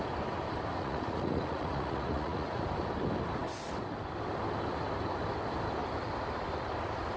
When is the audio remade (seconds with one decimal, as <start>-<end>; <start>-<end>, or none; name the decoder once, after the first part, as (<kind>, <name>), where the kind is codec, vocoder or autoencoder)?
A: 0.7-2.6 (vocoder, Vocos)